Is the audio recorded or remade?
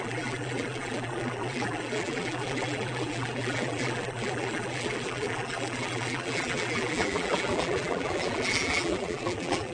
remade